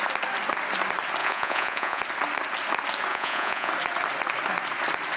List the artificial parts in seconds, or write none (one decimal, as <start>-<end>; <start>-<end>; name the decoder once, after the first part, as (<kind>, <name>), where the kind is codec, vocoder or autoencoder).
1.2-2.0 (vocoder, Vocos); 3.1-3.7